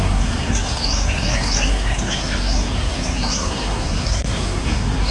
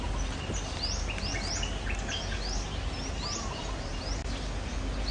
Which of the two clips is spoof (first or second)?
first